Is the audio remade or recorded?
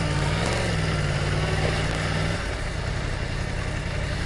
recorded